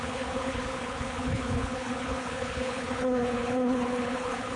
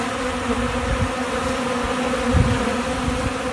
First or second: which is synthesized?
first